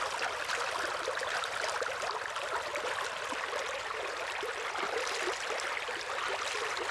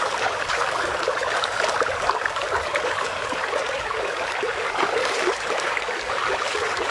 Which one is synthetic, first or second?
second